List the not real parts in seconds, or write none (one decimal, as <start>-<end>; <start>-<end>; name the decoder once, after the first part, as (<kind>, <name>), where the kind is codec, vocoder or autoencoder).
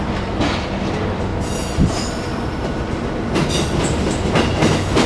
none